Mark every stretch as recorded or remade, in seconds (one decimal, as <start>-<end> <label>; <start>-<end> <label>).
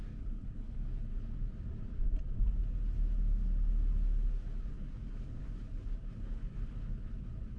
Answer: 0.0-1.1 remade; 1.1-4.6 recorded; 4.6-7.6 remade